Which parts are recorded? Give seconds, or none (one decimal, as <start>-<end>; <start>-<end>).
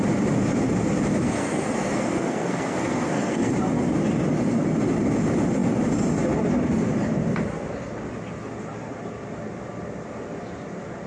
0.0-1.2; 3.5-11.1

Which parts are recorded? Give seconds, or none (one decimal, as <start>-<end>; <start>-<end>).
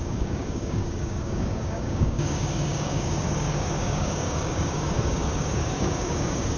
none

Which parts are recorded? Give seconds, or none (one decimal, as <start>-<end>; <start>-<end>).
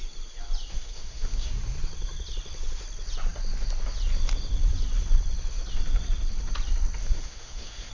0.0-0.7; 1.5-7.0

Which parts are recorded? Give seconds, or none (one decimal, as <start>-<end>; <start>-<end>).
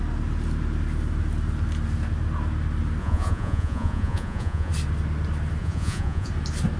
0.0-3.0; 4.7-5.6; 6.3-6.8